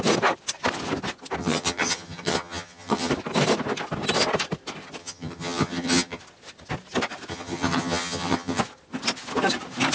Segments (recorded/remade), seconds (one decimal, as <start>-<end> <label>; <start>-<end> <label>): 0.0-1.4 recorded; 1.4-3.1 remade; 3.1-5.0 recorded; 5.0-6.2 remade; 6.2-7.3 recorded; 7.3-8.6 remade; 8.6-9.9 recorded